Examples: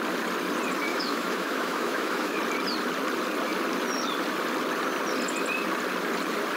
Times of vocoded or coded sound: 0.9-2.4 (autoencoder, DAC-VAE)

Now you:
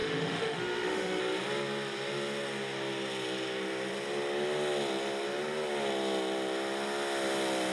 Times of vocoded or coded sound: 0.0-1.2 (autoencoder, DAC-VAE)

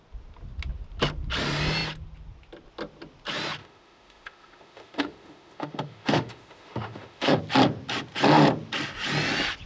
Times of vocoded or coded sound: 3.6-7.4 (autoencoder, DAC-VAE)

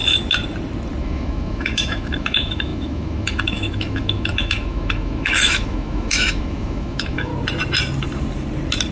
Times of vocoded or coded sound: 1.0-7.3 (autoencoder, DAC-VAE)

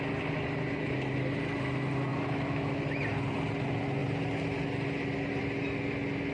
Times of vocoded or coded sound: 2.1-2.8 (autoencoder, DAC-VAE)